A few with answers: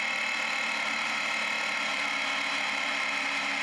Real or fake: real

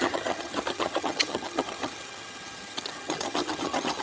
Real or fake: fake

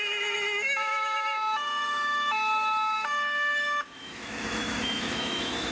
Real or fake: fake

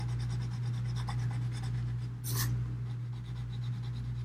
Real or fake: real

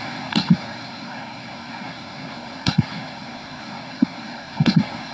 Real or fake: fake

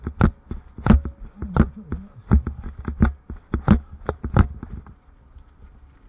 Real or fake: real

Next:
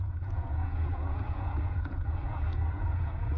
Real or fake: fake